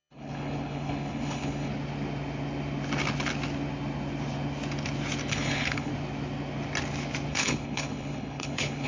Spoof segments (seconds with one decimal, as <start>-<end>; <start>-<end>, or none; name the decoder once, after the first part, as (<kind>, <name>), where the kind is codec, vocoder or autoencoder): 0.0-1.7 (codec, HILCodec); 5.3-5.9; 7.3-8.9